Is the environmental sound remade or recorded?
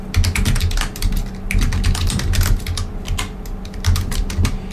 recorded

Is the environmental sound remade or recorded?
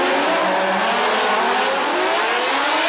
recorded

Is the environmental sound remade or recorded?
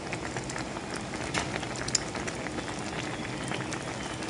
recorded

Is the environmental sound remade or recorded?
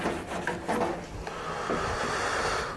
recorded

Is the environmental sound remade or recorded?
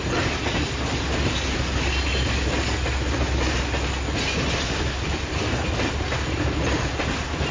recorded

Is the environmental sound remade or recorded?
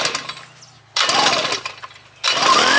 recorded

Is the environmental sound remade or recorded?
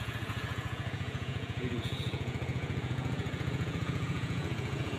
remade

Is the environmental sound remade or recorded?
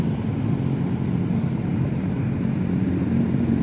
remade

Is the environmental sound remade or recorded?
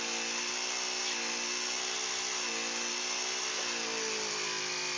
recorded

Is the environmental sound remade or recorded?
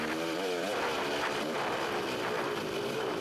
recorded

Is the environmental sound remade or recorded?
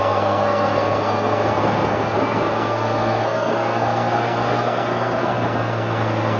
remade